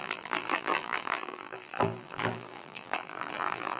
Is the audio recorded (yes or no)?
no